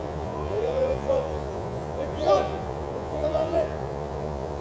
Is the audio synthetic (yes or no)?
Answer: yes